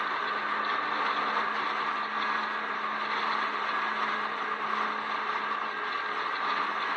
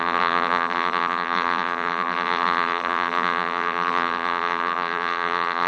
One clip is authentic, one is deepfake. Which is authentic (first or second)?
first